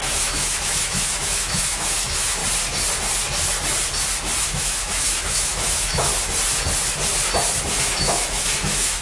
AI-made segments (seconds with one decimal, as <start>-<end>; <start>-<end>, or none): 0.0-2.4; 4.4-6.1; 7.8-9.0